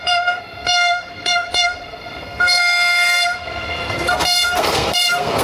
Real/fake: fake